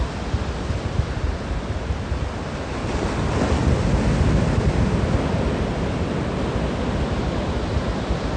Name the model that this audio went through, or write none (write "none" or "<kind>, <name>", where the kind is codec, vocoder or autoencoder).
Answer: none